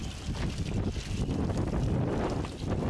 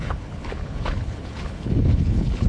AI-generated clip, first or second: second